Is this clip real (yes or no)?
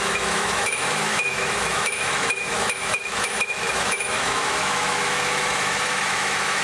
no